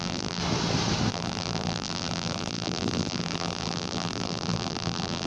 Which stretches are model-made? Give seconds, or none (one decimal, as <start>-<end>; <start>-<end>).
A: 0.0-0.4; 1.1-5.3